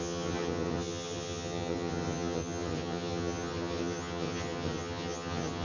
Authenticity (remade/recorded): remade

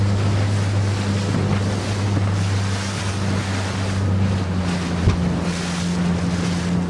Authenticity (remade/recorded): recorded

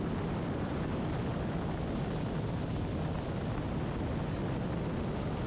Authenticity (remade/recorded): recorded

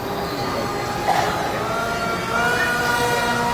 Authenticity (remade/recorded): recorded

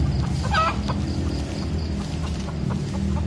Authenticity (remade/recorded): recorded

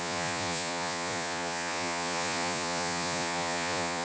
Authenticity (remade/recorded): remade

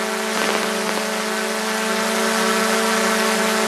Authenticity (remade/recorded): recorded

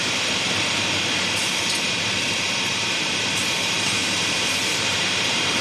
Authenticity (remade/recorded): remade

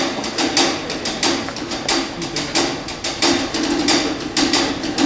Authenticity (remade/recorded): recorded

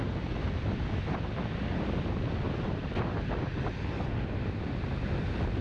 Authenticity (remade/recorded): recorded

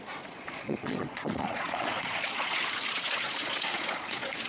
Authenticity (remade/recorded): remade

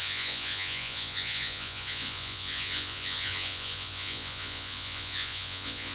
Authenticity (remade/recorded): remade